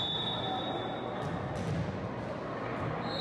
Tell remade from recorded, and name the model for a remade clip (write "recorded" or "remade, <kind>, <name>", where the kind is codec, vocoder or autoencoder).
recorded